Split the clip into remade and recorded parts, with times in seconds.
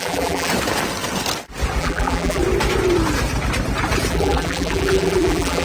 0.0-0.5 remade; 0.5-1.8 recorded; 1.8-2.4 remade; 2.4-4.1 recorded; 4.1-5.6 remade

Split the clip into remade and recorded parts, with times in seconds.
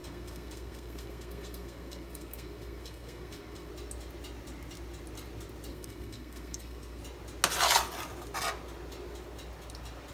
0.0-3.7 remade; 3.7-5.7 recorded; 5.7-7.0 remade; 7.0-10.1 recorded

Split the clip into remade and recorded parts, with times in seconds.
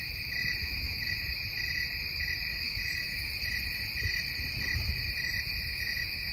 0.0-0.6 recorded; 0.6-1.2 remade; 1.2-2.5 recorded; 2.5-3.3 remade; 3.3-5.7 recorded; 5.7-6.3 remade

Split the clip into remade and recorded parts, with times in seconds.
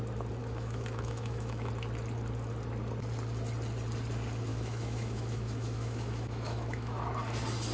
0.0-0.4 recorded; 0.4-1.7 remade; 1.7-4.5 recorded; 4.5-7.0 remade; 7.0-7.7 recorded